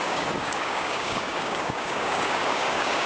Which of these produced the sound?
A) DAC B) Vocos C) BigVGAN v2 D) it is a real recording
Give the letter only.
A